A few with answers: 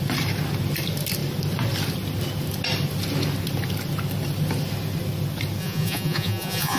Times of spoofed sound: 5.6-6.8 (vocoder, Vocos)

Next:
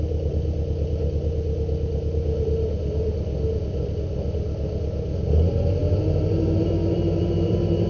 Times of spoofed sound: none

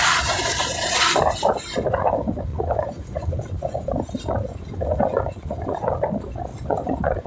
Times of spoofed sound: 2.5-3.9 (vocoder, Vocos); 4.5-5.9; 6.5-7.3

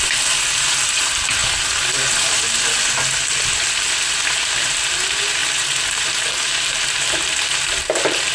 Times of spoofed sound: none

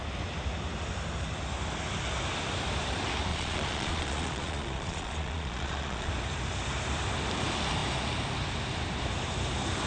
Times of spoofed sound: 3.3-6.1 (vocoder, Vocos)

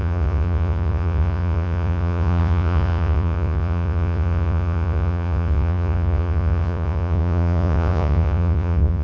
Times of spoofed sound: 0.0-9.0 (vocoder, Vocos)